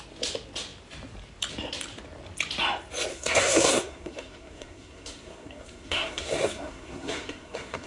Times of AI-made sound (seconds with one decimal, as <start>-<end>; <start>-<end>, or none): 3.1-7.9